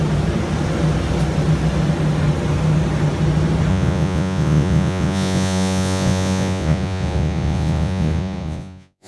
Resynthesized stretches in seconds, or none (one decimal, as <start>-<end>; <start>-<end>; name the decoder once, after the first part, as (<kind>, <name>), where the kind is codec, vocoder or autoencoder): 3.7-9.1 (vocoder, Vocos)